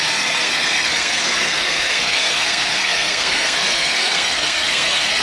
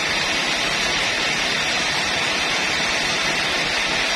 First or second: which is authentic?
second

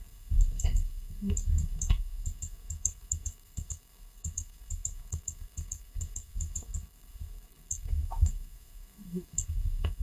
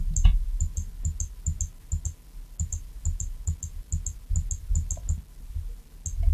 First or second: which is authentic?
second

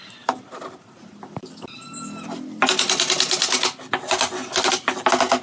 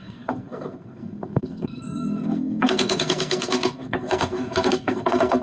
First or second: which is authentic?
first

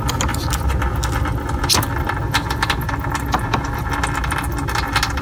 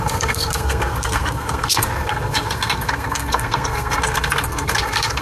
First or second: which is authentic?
first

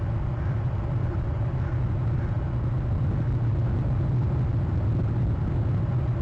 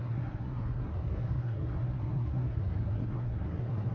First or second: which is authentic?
first